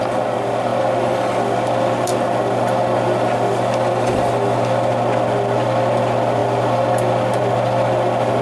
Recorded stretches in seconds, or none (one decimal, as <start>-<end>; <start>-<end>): 0.0-8.4